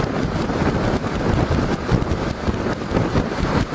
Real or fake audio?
real